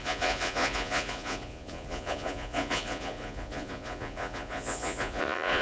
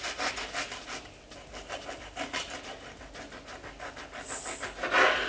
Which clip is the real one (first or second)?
second